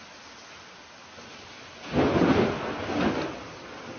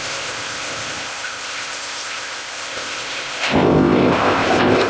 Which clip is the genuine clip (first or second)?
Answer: first